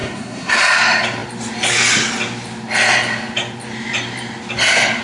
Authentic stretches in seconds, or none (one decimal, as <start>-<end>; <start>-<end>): 0.6-5.0